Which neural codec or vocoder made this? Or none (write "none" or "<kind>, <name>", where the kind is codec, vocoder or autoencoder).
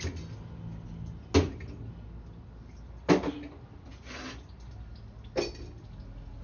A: none